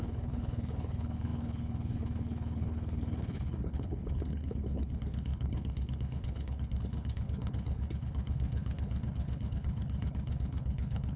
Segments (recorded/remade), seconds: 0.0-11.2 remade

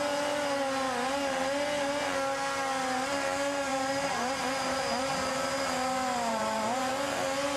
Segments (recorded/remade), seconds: 0.0-3.7 recorded; 3.7-5.1 remade; 5.1-6.3 recorded; 6.3-6.9 remade; 6.9-7.6 recorded